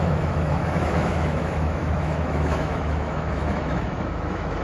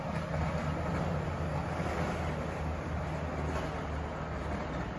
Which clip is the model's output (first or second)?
first